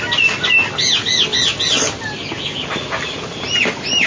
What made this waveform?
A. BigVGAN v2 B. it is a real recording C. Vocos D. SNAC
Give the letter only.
B